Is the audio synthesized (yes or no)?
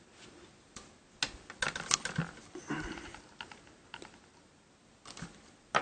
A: no